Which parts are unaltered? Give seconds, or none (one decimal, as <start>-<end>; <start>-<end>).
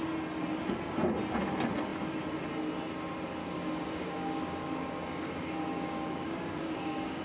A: 0.0-3.4